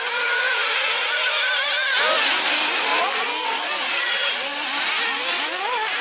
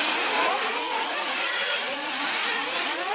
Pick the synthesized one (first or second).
second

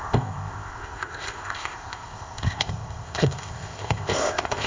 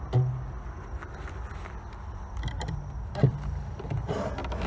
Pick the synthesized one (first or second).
first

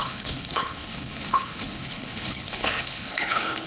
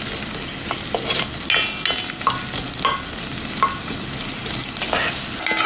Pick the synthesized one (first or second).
first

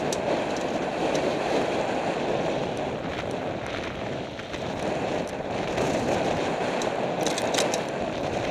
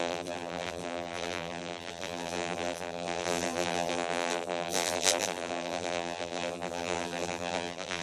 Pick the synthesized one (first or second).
second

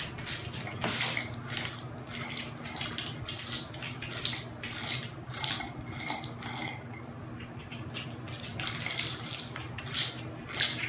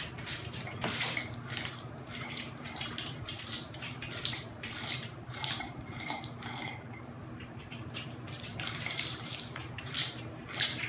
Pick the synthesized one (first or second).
second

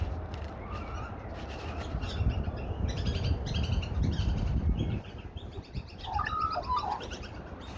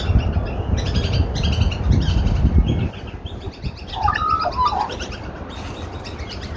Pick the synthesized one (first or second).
first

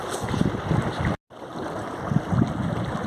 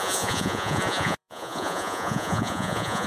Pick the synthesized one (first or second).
second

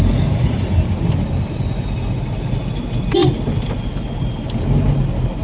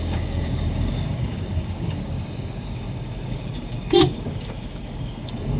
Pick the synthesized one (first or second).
second